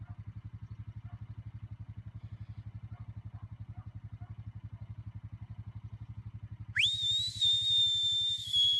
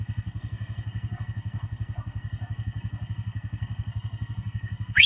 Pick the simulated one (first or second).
second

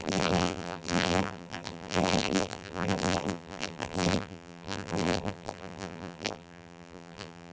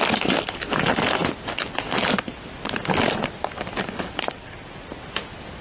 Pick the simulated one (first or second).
first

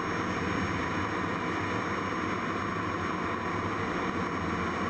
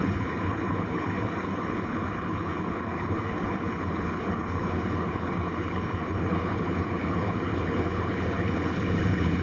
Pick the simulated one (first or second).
second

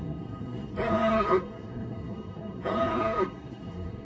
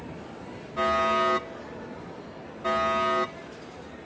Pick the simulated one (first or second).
first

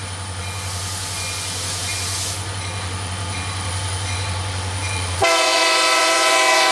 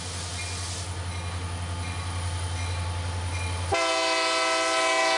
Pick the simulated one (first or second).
first